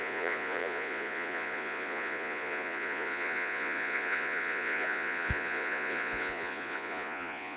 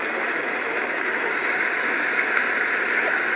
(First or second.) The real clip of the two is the second